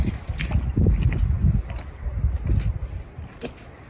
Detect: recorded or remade recorded